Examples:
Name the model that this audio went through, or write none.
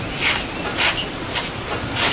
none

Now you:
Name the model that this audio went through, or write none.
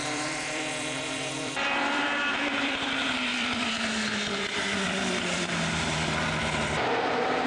vocoder, BigVGAN v2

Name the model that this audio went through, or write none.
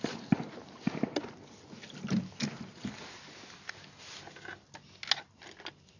none